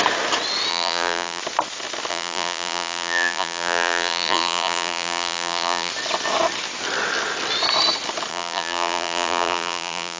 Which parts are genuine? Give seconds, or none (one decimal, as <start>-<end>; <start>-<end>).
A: 0.0-0.7; 1.4-2.1; 5.9-8.3

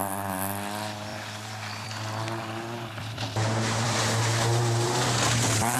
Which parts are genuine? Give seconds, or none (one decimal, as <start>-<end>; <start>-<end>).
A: 0.0-1.1; 4.0-5.8

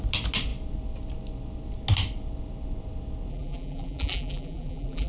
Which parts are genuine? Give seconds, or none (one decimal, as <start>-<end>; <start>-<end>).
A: 0.0-3.3

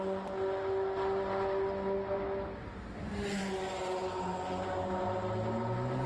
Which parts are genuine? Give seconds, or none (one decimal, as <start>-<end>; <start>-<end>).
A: 0.0-4.0; 4.7-6.1